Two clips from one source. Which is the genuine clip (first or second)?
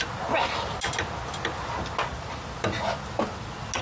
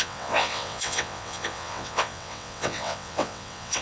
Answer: first